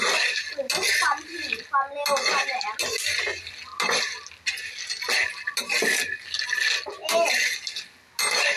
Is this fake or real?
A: real